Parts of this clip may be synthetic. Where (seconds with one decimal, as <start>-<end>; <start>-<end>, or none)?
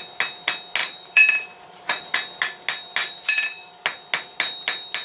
0.8-2.1; 3.0-3.7